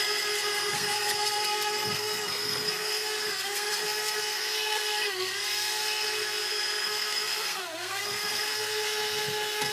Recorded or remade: remade